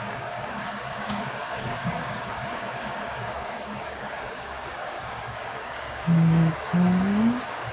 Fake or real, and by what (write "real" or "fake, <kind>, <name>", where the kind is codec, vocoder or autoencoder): fake, codec, DAC